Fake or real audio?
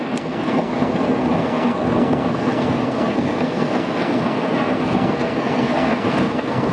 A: fake